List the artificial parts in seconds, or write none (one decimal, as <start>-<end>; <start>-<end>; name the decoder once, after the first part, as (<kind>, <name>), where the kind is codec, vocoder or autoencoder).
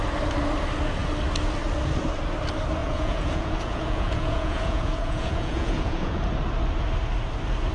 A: 2.8-6.2 (vocoder, Vocos)